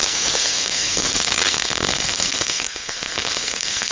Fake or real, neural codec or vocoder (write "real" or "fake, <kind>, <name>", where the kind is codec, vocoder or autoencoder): fake, codec, SNAC